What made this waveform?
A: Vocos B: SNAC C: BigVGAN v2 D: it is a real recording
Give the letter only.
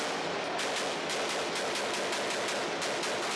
D